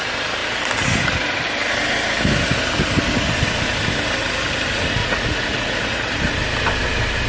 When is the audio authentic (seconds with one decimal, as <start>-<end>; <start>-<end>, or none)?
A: 0.0-5.0; 6.1-7.3